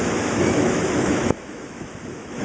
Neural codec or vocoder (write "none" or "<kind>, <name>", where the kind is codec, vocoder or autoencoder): autoencoder, DAC-VAE